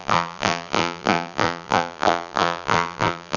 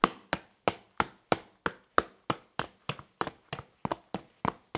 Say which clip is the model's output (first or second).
first